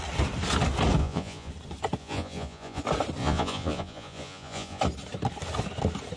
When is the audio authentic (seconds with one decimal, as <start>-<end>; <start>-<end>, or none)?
0.0-1.0; 1.5-2.0; 2.8-3.2; 4.8-6.2